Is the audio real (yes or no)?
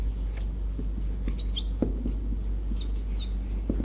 yes